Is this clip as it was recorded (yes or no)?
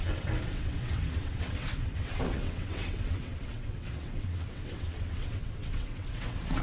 no